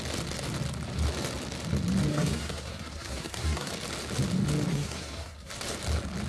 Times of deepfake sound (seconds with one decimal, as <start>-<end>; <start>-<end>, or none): 2.1-3.7; 4.7-5.5